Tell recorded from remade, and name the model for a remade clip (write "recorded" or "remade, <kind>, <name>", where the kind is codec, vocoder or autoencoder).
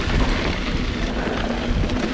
recorded